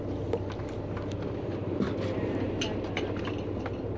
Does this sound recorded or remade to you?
recorded